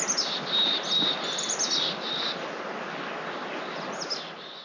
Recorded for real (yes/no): yes